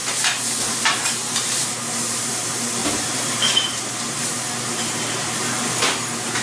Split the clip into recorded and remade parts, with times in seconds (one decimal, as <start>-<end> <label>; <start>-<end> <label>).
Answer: 0.0-0.9 recorded; 0.9-6.4 remade